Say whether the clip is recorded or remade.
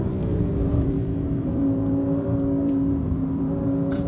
remade